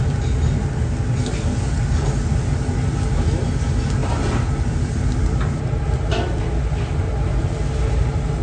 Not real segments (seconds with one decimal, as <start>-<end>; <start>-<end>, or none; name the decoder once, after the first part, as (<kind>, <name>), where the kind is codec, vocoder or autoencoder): none